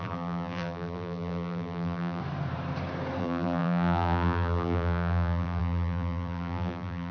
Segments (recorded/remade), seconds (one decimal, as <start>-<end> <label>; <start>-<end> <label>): 0.0-2.2 remade; 2.2-3.2 recorded; 3.2-7.1 remade